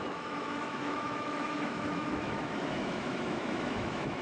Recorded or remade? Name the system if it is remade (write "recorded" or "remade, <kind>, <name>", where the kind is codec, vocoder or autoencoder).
remade, autoencoder, DAC-VAE